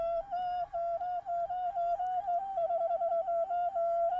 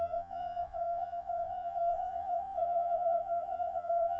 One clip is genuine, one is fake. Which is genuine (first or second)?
first